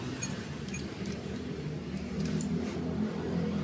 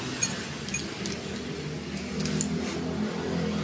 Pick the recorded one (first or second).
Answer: second